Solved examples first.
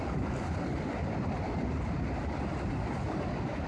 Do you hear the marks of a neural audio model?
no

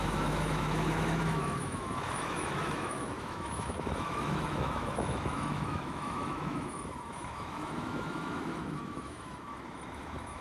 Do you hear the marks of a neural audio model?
yes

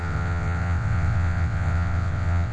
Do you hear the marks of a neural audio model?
yes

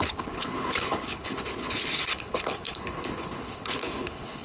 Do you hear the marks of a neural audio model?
yes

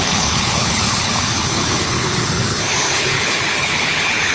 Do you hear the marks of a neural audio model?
yes